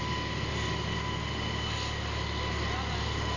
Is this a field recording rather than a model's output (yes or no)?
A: yes